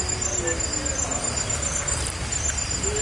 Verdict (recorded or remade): recorded